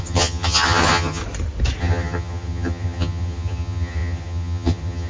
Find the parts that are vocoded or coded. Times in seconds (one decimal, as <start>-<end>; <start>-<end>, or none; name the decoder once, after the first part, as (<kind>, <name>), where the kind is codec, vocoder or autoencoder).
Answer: 0.0-1.2 (vocoder, HiFi-GAN); 1.8-5.1